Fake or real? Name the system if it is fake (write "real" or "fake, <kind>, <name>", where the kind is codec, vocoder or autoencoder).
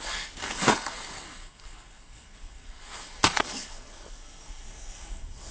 fake, codec, SNAC